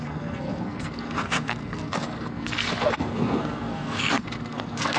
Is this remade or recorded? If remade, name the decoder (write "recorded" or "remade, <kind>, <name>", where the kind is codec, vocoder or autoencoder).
remade, codec, SNAC